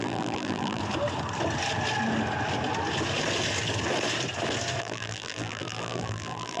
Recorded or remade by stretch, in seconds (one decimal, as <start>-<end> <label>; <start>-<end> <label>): 0.0-0.8 remade; 0.8-4.8 recorded; 4.8-6.6 remade